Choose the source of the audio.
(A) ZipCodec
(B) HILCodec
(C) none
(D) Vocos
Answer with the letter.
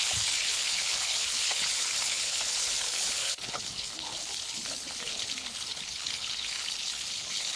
B